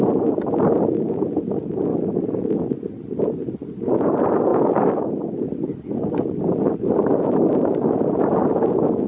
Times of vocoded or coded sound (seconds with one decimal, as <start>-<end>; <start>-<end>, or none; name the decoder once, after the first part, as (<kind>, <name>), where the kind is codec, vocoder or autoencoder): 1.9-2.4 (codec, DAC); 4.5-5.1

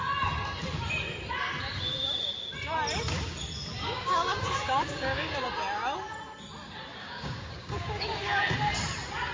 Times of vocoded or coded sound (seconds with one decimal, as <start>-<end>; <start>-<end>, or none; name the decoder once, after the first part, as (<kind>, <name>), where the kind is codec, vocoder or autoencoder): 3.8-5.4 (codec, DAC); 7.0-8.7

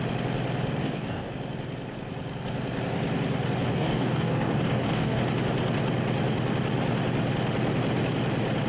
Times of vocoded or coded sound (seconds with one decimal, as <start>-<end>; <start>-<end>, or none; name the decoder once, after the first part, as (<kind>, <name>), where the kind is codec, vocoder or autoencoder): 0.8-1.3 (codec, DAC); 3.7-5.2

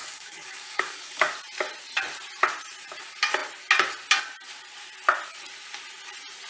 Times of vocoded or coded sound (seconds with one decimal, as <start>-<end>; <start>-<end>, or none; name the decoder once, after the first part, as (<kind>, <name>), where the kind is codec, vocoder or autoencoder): 0.0-1.3 (codec, DAC)

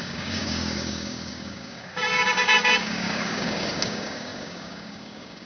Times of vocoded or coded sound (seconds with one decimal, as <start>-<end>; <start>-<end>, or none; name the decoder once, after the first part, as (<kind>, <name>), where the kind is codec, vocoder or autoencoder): 0.0-5.5 (codec, DAC)

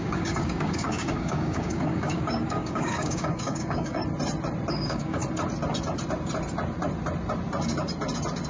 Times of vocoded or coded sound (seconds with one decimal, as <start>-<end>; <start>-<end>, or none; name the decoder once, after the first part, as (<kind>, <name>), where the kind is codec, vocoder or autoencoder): 0.0-4.0 (codec, DAC); 4.7-5.2

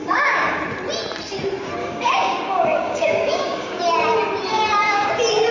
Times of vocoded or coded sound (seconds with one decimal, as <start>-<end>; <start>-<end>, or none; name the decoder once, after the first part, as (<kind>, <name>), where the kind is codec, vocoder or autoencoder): 0.0-0.6 (codec, DAC); 1.8-3.8; 4.5-5.1